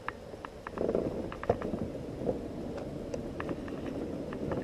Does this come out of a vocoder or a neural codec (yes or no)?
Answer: no